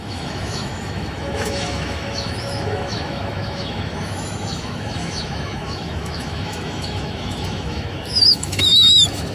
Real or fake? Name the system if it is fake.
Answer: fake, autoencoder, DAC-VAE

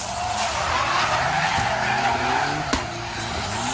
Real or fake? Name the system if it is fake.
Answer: real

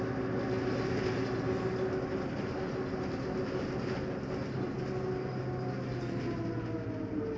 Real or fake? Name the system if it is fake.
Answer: real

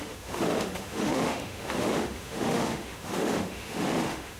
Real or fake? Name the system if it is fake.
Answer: fake, autoencoder, DAC-VAE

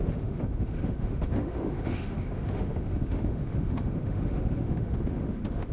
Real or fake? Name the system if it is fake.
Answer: fake, autoencoder, DAC-VAE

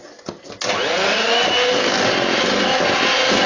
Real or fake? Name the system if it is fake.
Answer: real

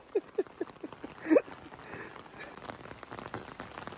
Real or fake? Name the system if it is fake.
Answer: real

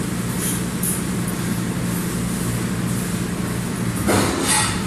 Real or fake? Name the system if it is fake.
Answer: real